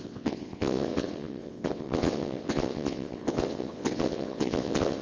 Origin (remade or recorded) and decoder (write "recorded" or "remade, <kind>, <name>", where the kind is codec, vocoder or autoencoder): remade, vocoder, WaveNeXt